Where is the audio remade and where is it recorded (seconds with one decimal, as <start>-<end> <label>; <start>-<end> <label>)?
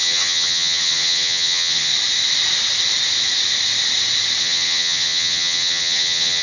0.0-1.9 remade; 1.9-4.4 recorded; 4.4-6.4 remade